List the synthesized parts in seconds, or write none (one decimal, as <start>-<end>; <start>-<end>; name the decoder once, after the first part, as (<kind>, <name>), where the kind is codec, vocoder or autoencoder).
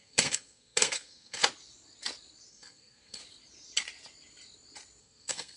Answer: 0.0-1.4 (codec, SNAC); 2.5-3.2; 5.0-5.6